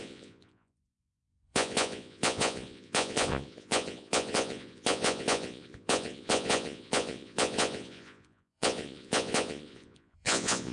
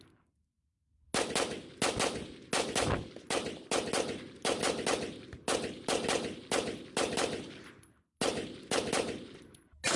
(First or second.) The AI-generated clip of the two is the first